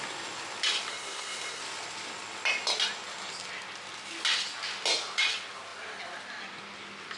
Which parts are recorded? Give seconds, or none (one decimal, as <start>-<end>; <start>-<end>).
0.0-0.9; 1.6-7.2